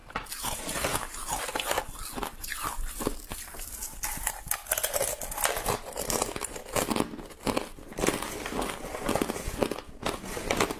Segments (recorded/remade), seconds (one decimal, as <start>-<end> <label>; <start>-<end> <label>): 0.0-10.8 recorded